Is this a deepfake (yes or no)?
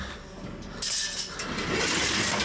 no